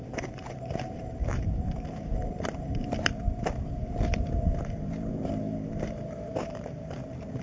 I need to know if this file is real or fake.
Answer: fake